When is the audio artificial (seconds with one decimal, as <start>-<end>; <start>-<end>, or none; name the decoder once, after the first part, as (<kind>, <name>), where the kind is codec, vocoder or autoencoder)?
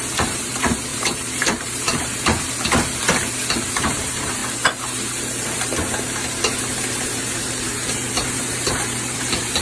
0.0-3.0 (vocoder, BigVGAN v2); 3.6-4.4; 7.0-9.6